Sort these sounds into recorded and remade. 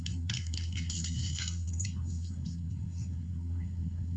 remade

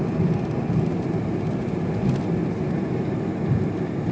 recorded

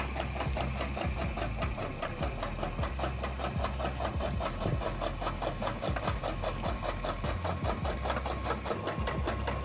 recorded